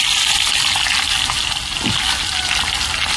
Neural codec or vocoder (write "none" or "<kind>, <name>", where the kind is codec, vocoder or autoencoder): none